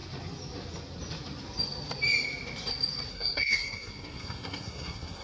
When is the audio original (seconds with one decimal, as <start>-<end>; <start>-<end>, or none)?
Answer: 0.0-3.1